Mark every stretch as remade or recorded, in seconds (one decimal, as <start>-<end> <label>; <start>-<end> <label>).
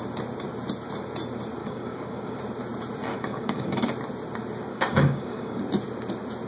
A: 0.0-1.6 recorded; 1.6-2.4 remade; 2.4-3.1 recorded; 3.1-3.9 remade; 3.9-4.7 recorded; 4.7-5.6 remade; 5.6-6.5 recorded